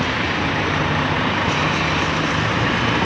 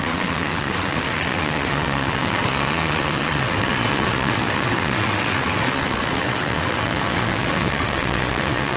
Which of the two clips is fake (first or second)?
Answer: second